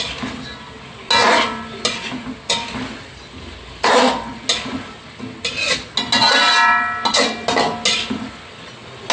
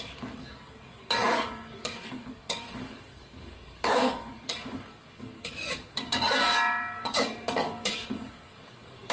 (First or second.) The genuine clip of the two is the first